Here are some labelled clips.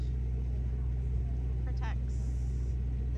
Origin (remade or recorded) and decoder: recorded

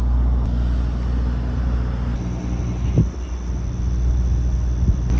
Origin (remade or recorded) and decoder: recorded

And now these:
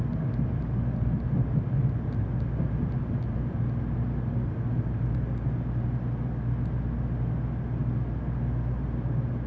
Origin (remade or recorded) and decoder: recorded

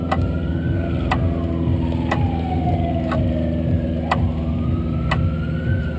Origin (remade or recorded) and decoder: recorded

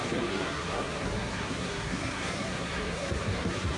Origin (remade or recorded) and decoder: remade, codec, SNAC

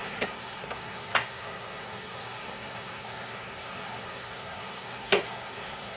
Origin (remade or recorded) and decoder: remade, codec, SNAC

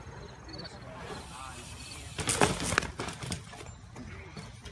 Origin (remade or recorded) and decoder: recorded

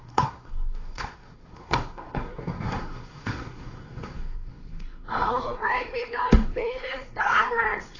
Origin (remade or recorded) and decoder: remade, codec, SNAC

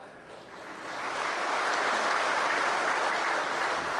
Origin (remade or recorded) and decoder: recorded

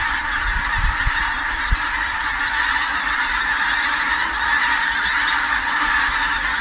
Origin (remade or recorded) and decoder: recorded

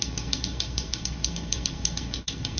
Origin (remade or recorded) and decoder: remade, codec, SNAC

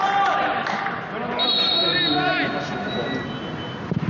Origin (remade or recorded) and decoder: recorded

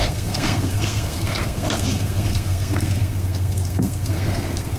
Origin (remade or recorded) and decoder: remade, codec, SNAC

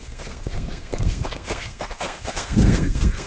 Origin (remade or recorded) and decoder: remade, codec, SNAC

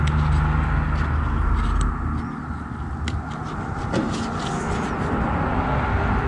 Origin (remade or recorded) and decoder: recorded